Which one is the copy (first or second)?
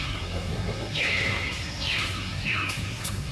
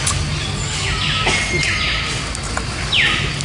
first